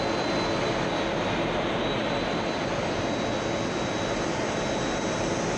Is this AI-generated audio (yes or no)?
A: no